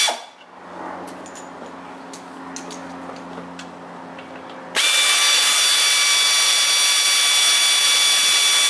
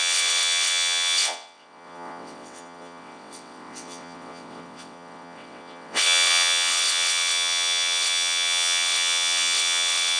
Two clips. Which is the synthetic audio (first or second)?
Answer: second